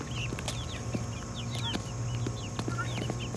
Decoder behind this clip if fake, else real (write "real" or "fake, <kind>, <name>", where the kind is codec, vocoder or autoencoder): real